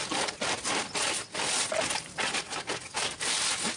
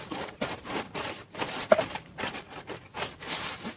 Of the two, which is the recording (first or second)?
first